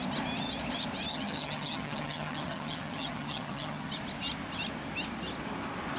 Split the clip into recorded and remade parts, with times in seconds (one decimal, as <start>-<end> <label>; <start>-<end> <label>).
0.0-1.1 recorded; 1.1-3.9 remade; 3.9-6.0 recorded